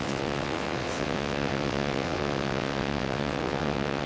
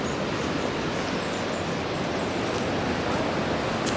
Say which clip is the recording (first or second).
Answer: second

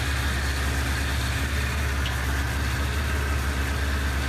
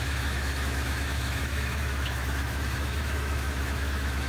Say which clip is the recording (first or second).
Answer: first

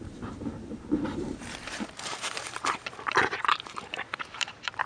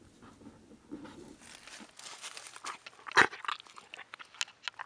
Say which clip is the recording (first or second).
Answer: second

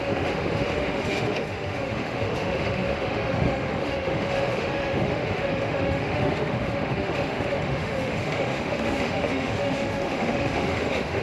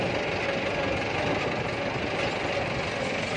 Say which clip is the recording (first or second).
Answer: second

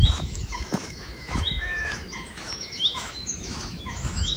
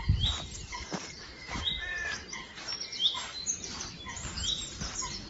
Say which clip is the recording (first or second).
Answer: second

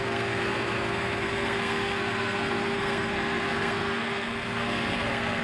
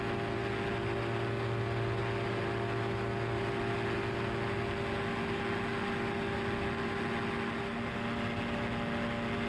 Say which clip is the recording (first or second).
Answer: second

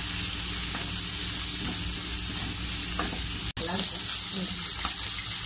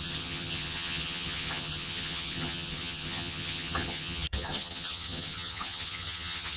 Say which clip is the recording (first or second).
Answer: first